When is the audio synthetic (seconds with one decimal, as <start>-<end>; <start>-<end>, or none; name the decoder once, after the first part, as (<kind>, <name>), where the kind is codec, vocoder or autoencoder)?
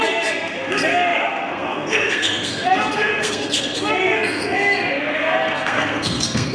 0.0-6.5 (codec, SNAC)